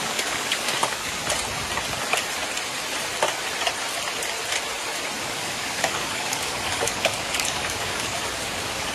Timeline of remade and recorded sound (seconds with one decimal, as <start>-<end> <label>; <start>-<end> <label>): 0.0-1.2 remade; 1.2-5.2 recorded; 5.2-8.9 remade